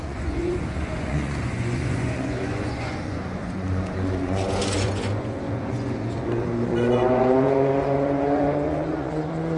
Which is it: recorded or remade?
remade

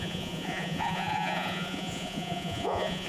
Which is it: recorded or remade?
remade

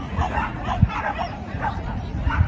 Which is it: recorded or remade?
remade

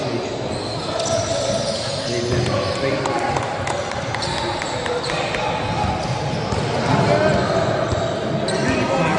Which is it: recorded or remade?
recorded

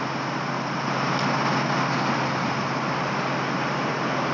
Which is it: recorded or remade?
recorded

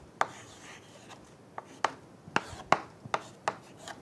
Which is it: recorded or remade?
recorded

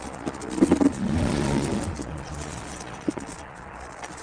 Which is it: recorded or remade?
remade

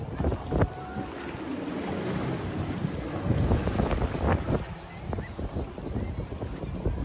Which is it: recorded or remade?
recorded